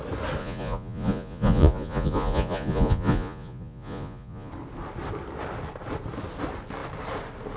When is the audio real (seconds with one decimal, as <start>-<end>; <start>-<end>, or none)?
0.0-0.4; 4.5-7.6